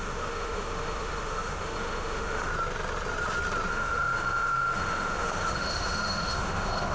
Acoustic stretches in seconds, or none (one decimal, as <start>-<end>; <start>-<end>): 2.5-3.7